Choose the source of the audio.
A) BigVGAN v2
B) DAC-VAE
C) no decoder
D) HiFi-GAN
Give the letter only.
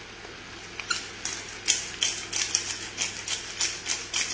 C